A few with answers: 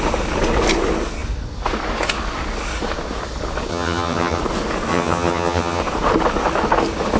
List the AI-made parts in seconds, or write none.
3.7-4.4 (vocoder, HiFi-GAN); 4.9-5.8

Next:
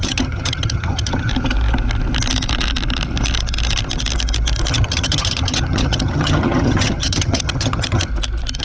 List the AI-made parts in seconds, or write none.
0.0-1.3 (vocoder, HiFi-GAN); 4.7-8.1

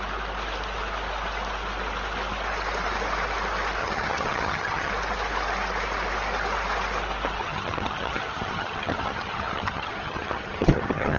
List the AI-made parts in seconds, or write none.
3.8-4.9 (vocoder, HiFi-GAN); 7.4-11.2

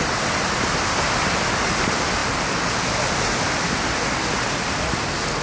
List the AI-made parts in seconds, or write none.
none

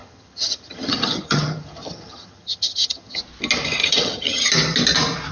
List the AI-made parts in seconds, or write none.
0.0-3.2 (vocoder, HiFi-GAN); 3.8-4.5

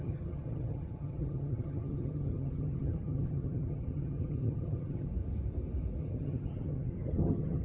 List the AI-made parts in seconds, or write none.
0.0-5.1 (vocoder, HiFi-GAN); 6.0-7.6

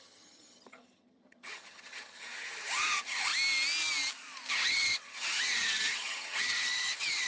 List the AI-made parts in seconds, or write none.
0.0-3.3 (vocoder, HiFi-GAN); 4.5-7.3

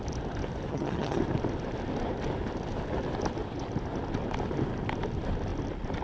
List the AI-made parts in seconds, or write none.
0.7-1.2 (vocoder, HiFi-GAN)